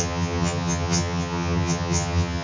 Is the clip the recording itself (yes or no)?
no